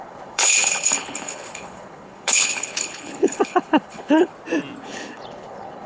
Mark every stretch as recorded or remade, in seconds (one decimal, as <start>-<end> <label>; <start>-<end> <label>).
0.0-4.3 remade; 4.3-4.8 recorded; 4.8-5.9 remade